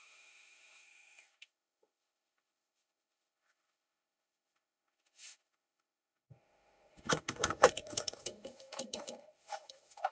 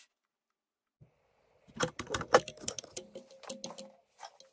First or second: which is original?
second